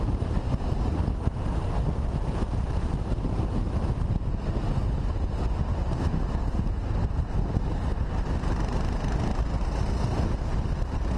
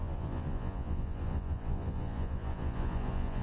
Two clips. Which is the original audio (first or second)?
first